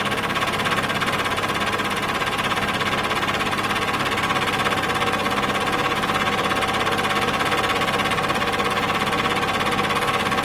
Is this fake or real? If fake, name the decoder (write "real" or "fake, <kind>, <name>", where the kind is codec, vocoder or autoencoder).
real